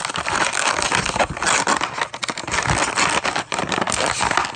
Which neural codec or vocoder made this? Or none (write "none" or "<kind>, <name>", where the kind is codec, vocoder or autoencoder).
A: none